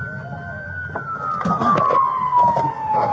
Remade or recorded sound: recorded